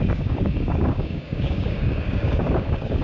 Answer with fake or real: fake